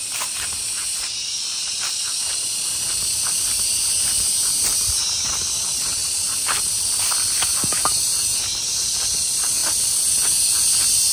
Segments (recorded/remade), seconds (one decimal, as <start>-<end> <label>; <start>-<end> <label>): 0.0-6.0 remade; 6.0-7.7 recorded; 7.7-9.6 remade; 9.6-10.3 recorded; 10.3-11.1 remade